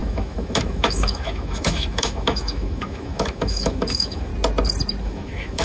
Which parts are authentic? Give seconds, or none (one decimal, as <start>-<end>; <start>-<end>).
4.3-5.0